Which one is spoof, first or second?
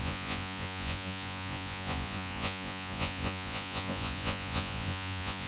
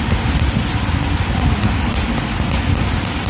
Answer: first